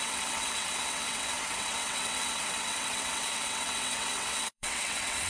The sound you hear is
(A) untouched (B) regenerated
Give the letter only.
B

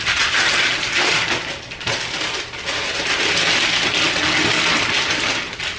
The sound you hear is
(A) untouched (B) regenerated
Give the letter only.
A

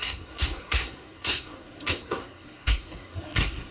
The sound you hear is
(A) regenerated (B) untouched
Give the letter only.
A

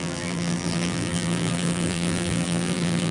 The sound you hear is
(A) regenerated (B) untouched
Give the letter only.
A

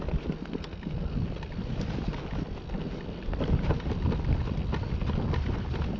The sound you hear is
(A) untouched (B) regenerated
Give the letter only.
A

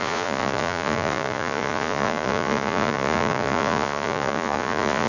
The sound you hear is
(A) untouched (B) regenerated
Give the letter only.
B